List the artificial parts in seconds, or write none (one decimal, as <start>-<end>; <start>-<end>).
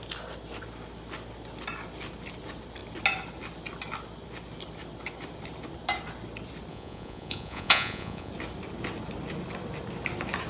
6.7-8.3